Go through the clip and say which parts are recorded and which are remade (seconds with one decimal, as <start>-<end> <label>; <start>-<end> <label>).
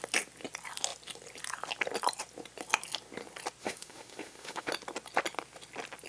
0.0-3.6 recorded; 3.6-4.7 remade; 4.7-6.1 recorded